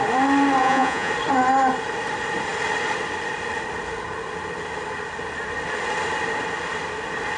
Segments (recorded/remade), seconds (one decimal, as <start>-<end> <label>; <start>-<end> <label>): 0.0-0.6 recorded; 0.6-1.1 remade; 1.1-7.4 recorded